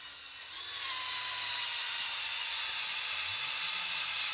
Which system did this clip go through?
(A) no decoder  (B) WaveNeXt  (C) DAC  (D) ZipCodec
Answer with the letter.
A